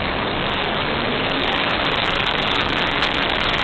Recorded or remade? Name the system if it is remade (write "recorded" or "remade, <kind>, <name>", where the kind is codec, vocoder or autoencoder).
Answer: remade, codec, DAC